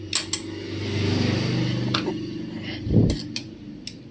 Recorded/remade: recorded